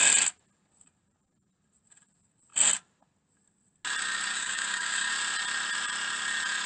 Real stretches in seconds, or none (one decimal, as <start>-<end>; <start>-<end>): 0.0-4.3; 5.1-6.7